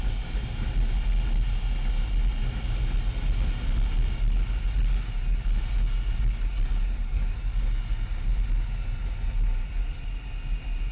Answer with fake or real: real